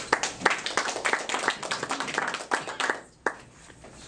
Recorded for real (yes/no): yes